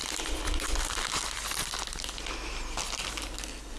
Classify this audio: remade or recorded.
recorded